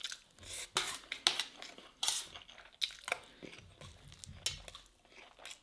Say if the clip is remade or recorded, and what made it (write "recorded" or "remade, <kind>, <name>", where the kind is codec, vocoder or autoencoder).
recorded